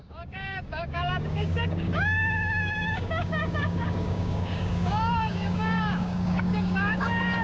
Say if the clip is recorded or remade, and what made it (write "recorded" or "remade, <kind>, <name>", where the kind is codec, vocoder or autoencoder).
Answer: remade, codec, DAC